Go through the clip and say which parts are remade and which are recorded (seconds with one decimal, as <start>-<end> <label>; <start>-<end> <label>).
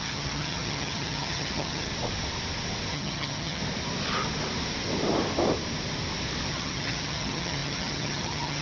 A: 0.0-1.9 remade; 1.9-2.9 recorded; 2.9-3.6 remade; 3.6-6.5 recorded; 6.5-8.6 remade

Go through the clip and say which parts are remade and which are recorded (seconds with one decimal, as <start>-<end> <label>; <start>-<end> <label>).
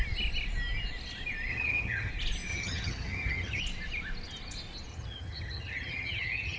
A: 0.0-1.5 recorded; 1.5-2.1 remade; 2.1-2.5 recorded; 2.5-3.6 remade; 3.6-4.9 recorded; 4.9-6.6 remade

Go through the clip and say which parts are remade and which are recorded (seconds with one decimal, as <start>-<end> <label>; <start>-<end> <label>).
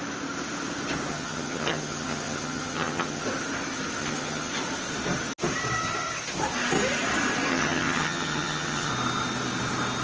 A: 0.0-1.1 recorded; 1.1-3.2 remade; 3.2-4.0 recorded; 4.0-4.5 remade; 4.5-7.5 recorded; 7.5-8.9 remade; 8.9-10.0 recorded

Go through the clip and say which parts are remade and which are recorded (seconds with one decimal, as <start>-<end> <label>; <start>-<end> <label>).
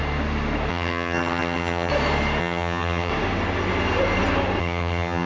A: 0.0-0.7 recorded; 0.7-1.9 remade; 1.9-2.4 recorded; 2.4-3.1 remade; 3.1-4.6 recorded; 4.6-5.3 remade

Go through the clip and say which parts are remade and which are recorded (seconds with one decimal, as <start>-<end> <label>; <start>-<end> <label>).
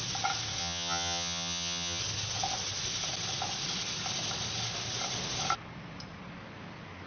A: 0.0-0.6 recorded; 0.6-2.0 remade; 2.0-7.1 recorded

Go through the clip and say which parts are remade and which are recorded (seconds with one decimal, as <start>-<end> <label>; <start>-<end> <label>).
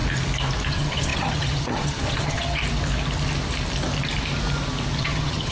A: 0.0-0.7 recorded; 0.7-2.6 remade; 2.6-5.0 recorded; 5.0-5.5 remade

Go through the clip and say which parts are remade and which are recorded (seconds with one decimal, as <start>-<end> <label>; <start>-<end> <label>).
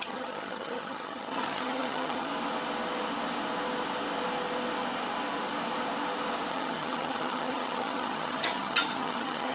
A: 0.0-2.3 remade; 2.3-6.5 recorded; 6.5-9.5 remade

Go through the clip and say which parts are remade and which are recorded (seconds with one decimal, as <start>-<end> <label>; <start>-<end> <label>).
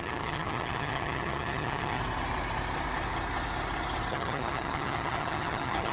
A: 0.0-2.0 remade; 2.0-4.1 recorded; 4.1-5.9 remade